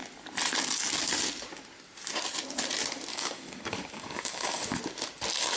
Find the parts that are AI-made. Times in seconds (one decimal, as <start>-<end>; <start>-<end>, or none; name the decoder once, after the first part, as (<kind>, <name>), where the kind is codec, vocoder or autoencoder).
3.1-4.8 (codec, DAC)